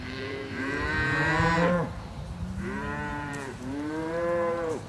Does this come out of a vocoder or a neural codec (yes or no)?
yes